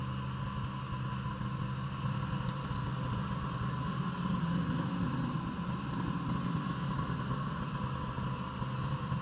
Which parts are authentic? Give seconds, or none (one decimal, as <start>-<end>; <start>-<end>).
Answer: 0.0-9.2